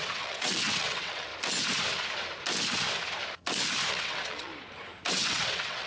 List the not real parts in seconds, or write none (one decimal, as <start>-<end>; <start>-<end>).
0.0-1.3; 3.9-4.5; 5.1-5.9